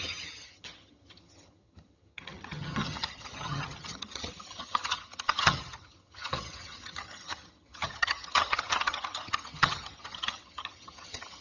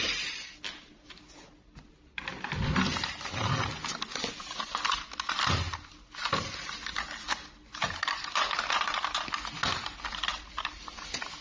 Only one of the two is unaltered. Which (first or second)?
second